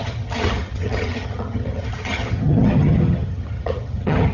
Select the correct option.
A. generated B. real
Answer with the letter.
A